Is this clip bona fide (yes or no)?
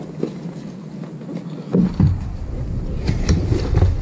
yes